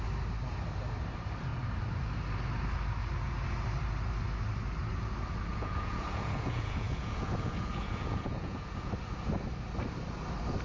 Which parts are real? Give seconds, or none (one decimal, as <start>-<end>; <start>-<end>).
0.0-5.5; 8.9-10.6